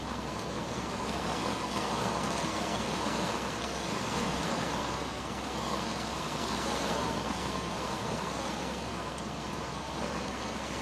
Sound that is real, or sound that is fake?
fake